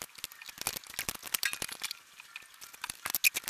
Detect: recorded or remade recorded